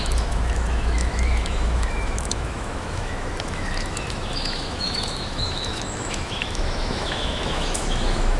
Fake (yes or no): yes